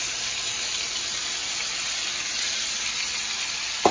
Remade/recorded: recorded